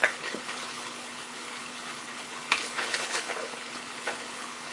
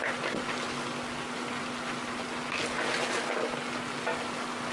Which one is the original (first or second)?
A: second